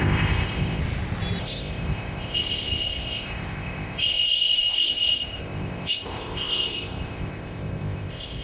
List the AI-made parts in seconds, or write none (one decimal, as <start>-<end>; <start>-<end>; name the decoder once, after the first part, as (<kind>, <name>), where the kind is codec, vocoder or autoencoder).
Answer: 0.0-0.8 (codec, ZipCodec); 1.4-8.4